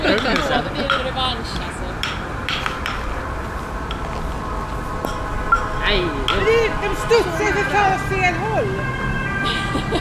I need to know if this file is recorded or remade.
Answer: recorded